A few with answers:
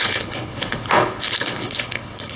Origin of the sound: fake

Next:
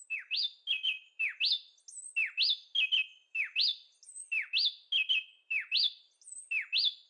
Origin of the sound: real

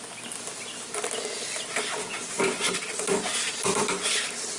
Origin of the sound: real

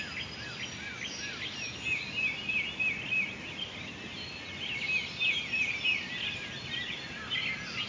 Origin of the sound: real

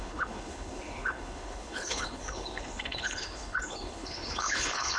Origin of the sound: fake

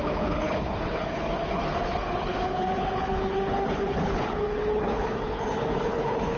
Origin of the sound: fake